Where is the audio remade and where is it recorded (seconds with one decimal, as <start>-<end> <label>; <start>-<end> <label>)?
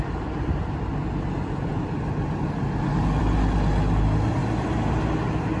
0.0-4.4 recorded; 4.4-5.0 remade; 5.0-5.6 recorded